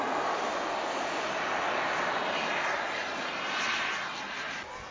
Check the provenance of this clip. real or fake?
real